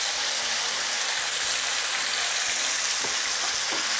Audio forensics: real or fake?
real